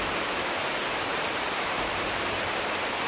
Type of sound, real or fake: fake